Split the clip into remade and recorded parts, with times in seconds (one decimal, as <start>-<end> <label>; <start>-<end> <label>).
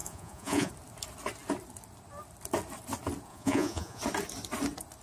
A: 0.0-0.7 remade; 0.7-3.3 recorded; 3.3-4.0 remade; 4.0-5.0 recorded